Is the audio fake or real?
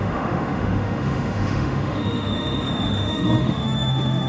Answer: fake